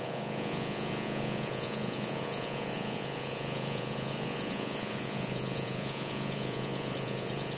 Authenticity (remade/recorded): remade